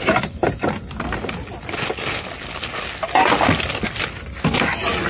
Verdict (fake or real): real